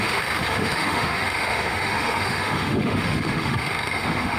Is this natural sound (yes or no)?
no